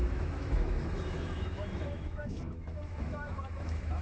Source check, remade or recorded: remade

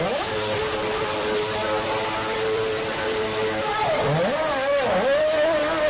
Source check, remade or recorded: recorded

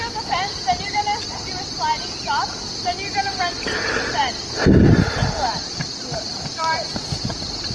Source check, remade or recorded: recorded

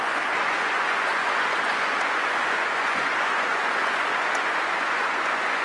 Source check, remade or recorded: remade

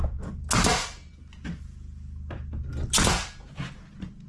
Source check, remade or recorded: recorded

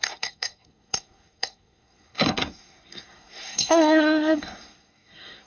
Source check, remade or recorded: remade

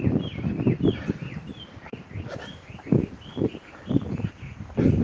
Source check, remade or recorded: remade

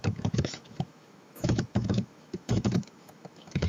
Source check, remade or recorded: remade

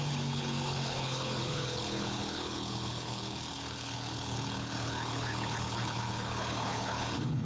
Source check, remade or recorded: remade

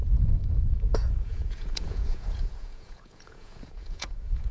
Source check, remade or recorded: remade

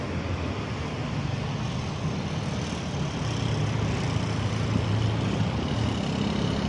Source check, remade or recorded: recorded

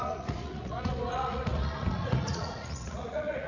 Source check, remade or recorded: remade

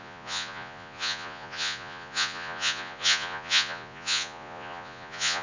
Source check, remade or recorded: remade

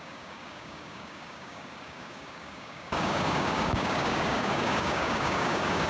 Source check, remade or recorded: remade